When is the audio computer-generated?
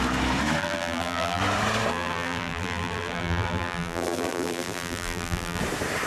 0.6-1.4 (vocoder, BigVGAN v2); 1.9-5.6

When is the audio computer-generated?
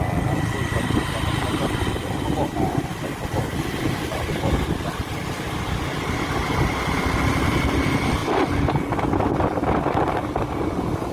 none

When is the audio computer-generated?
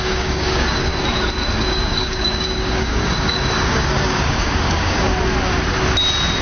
0.0-0.9 (codec, DAC); 1.5-5.1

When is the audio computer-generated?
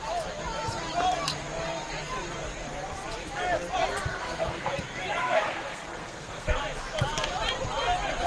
4.1-4.7 (codec, SNAC); 5.2-6.6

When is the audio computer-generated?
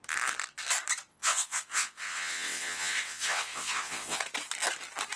1.1-4.2 (vocoder, WaveNeXt)